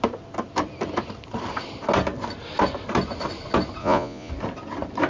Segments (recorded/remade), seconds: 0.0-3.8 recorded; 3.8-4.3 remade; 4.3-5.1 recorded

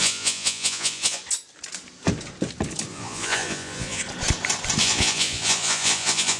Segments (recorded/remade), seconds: 0.0-1.2 remade; 1.2-2.9 recorded; 2.9-4.0 remade; 4.0-4.8 recorded; 4.8-6.4 remade

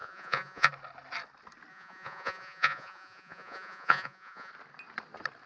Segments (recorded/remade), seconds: 0.0-0.7 remade; 0.7-1.7 recorded; 1.7-4.5 remade; 4.5-5.5 recorded

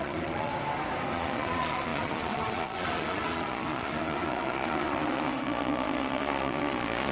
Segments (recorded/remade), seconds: 0.0-0.5 remade; 0.5-1.1 recorded; 1.1-7.1 remade